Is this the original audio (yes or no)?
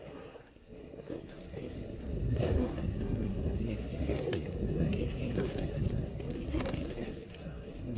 no